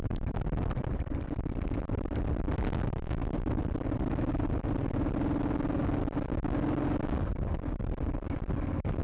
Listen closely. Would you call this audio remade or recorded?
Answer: recorded